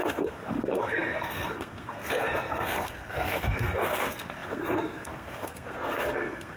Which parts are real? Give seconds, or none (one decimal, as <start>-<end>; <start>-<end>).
none